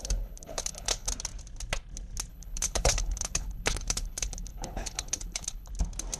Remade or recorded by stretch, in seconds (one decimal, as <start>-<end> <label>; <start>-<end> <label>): 0.0-1.1 remade; 1.1-2.3 recorded; 2.3-5.7 remade; 5.7-6.2 recorded